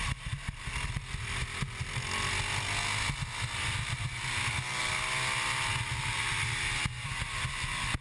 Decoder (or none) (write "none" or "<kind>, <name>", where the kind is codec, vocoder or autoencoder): none